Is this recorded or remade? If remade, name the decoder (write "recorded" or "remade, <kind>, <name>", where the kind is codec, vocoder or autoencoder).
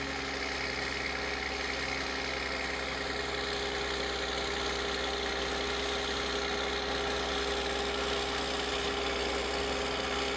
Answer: recorded